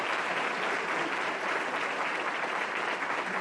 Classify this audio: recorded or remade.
recorded